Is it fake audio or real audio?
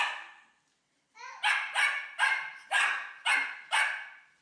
real